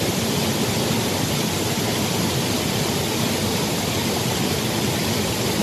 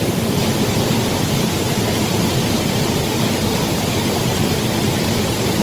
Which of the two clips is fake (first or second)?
first